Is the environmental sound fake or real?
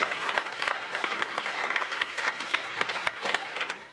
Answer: fake